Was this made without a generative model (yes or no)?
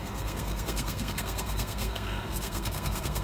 no